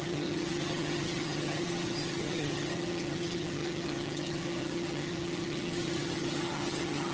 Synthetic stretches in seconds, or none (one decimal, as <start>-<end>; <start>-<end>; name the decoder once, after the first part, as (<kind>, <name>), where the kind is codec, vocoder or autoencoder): 0.0-7.1 (vocoder, HiFi-GAN)